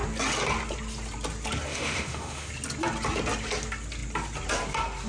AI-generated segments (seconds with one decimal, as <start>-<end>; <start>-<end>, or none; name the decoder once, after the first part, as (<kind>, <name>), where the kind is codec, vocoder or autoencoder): 1.7-2.5 (autoencoder, DAC-VAE)